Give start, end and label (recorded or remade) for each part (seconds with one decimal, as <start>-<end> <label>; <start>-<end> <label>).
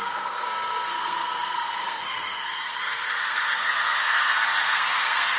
0.0-5.4 remade